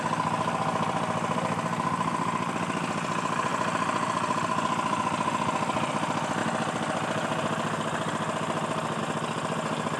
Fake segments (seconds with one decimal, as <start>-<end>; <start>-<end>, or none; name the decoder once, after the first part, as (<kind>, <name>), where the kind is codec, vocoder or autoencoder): none

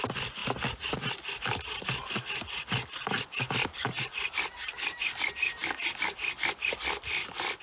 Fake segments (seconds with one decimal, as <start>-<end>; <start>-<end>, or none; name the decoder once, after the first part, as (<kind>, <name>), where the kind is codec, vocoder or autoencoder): none

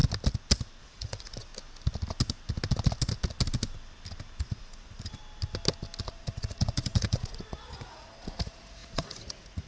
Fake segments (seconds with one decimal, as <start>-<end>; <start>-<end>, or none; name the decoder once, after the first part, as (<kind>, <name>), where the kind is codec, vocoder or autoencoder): 0.8-1.5 (vocoder, Vocos); 4.4-5.2; 6.0-9.7

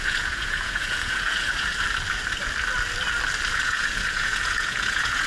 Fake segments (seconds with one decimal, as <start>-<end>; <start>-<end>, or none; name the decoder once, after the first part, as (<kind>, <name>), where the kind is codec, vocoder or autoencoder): 0.0-1.7 (vocoder, Vocos); 3.5-5.3

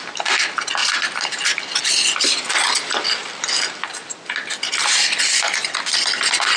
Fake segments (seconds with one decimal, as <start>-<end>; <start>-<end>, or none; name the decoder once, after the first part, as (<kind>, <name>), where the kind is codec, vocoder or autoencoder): none

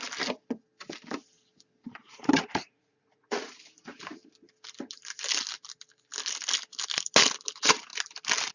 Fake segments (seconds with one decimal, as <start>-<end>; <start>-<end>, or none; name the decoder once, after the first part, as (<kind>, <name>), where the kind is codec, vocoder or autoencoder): 2.0-3.5 (vocoder, Vocos)